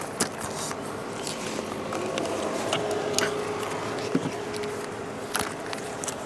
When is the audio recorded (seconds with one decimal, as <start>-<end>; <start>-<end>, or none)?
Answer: 0.0-1.0; 2.8-6.3